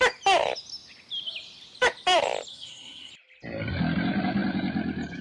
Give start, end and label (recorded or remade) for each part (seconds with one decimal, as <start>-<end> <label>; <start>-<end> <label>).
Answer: 0.0-2.5 recorded; 2.5-3.1 remade; 3.1-5.2 recorded